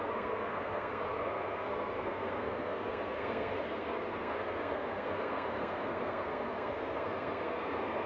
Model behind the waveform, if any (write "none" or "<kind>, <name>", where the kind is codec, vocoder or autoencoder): codec, SNAC